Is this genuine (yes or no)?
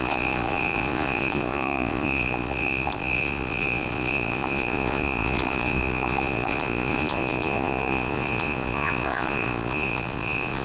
no